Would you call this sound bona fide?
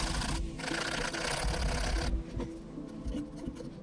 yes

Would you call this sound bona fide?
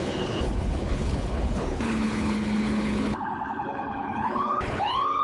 no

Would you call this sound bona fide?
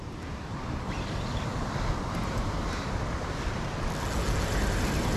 yes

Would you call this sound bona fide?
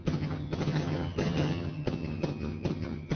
no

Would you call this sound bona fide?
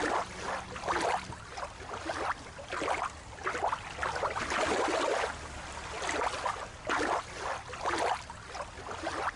yes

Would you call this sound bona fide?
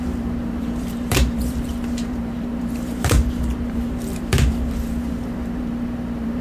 no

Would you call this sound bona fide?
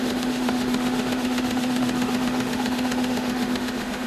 no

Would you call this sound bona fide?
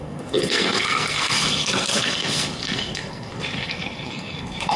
no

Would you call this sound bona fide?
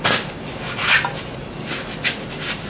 yes